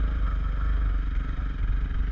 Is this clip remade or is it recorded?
recorded